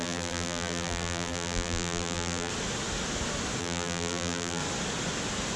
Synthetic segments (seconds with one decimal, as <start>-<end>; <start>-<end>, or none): 0.0-2.5; 3.6-4.6